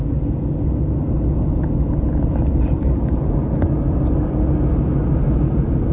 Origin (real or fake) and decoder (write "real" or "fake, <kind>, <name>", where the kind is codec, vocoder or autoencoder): real